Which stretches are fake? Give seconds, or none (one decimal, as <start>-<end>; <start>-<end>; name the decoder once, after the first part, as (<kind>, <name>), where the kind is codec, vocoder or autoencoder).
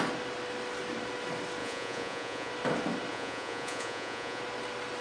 1.6-2.5 (vocoder, Vocos); 3.1-4.4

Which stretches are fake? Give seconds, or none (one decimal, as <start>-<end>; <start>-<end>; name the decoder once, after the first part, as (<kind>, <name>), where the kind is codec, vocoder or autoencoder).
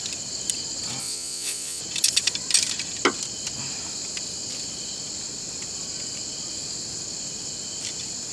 1.0-1.8 (vocoder, Vocos)